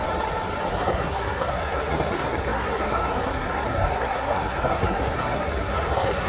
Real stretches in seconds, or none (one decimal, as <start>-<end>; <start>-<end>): 0.0-0.7

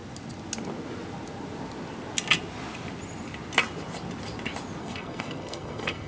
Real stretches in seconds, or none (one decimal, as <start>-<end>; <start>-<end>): 0.0-4.8